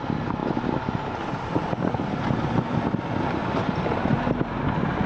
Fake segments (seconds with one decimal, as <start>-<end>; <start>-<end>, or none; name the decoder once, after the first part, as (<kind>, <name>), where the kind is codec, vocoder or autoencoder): none